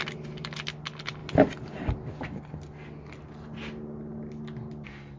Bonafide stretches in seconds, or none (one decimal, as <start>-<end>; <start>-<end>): 0.0-5.2